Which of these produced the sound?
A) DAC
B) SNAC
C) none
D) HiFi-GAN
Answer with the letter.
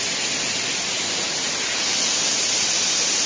C